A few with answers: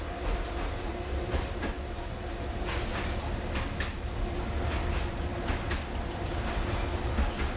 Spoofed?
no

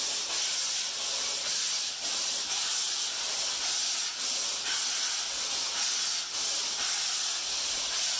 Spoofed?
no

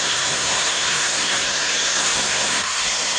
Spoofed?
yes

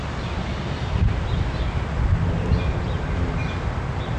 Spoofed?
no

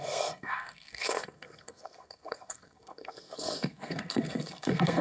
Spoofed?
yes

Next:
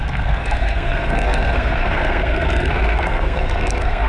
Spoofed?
yes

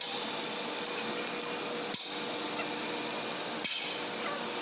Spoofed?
no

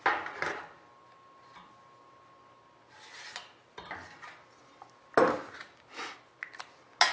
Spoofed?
no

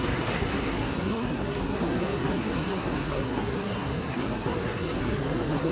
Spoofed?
yes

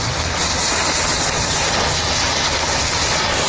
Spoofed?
no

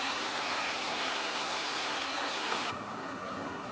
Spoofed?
yes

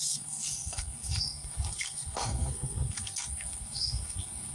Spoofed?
yes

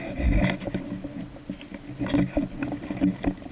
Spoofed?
no